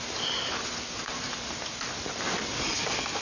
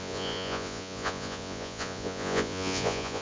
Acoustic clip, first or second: first